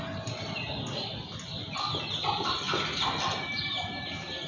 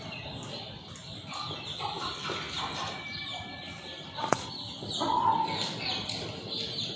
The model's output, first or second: second